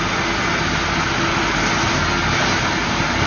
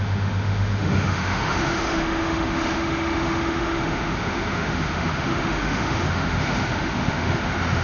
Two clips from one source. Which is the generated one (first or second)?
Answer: second